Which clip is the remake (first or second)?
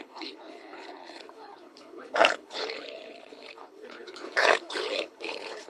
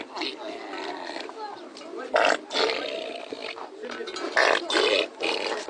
first